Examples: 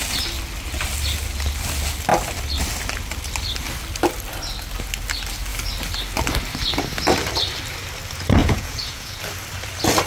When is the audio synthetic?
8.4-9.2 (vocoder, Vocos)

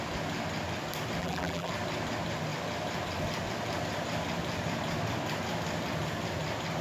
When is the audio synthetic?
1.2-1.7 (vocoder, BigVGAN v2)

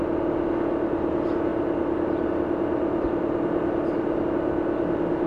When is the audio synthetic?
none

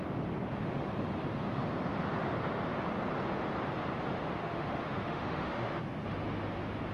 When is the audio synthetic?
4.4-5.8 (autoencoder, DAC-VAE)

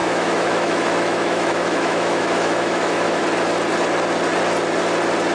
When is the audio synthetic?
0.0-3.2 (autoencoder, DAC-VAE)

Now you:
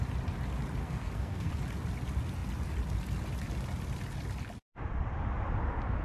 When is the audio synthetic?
0.8-1.5 (codec, SNAC)